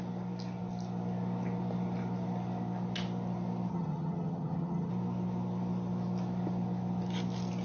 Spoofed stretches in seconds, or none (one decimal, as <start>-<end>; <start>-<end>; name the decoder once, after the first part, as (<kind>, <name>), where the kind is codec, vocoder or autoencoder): 3.7-4.9 (vocoder, HiFi-GAN)